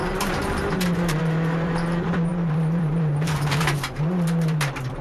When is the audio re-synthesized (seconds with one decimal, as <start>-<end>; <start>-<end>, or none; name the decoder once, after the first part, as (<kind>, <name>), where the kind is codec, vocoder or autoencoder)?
0.0-5.0 (vocoder, BigVGAN v2)

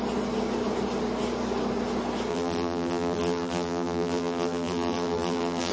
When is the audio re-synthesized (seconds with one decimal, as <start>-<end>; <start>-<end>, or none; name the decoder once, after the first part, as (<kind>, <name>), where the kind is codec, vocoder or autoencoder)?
2.3-5.7 (vocoder, BigVGAN v2)

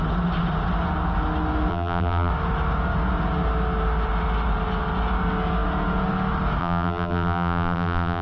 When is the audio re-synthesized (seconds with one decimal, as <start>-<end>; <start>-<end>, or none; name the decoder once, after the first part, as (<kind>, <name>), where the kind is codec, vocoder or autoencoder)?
1.7-2.3 (vocoder, BigVGAN v2); 6.6-8.2

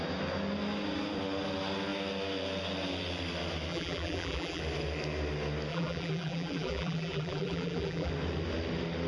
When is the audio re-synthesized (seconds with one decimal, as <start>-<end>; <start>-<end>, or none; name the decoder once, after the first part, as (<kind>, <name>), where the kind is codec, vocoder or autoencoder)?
3.7-4.6 (vocoder, BigVGAN v2); 5.7-8.1